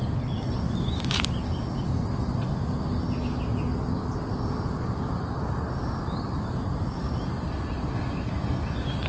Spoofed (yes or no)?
no